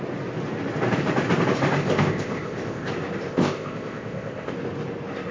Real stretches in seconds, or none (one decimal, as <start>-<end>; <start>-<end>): 0.0-1.8; 2.9-3.3; 4.5-5.3